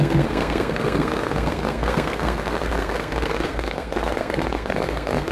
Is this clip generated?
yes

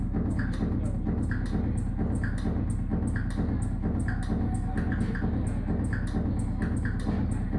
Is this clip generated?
no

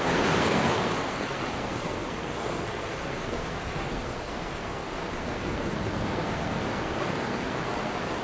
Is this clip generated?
yes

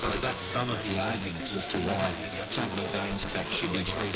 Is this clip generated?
yes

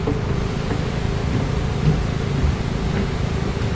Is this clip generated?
no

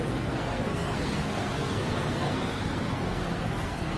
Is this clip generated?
yes